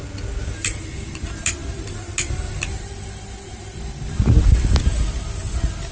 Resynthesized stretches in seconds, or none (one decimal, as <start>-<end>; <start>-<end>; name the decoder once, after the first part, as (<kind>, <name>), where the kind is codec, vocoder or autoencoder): none